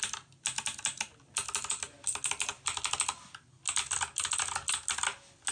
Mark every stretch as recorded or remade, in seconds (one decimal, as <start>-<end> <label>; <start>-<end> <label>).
0.0-5.5 recorded